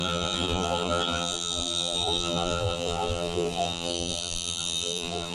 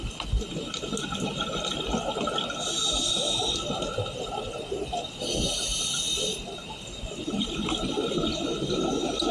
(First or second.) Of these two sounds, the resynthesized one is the first